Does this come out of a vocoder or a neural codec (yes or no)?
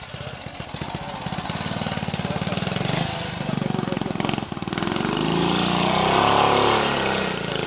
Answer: no